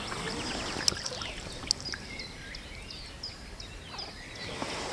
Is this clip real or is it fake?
real